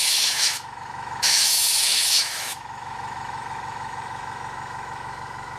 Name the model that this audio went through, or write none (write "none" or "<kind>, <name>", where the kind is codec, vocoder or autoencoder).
autoencoder, DAC-VAE